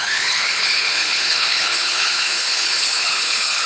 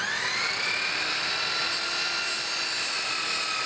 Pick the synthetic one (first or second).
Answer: first